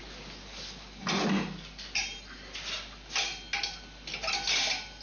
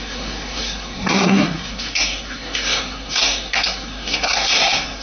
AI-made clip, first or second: second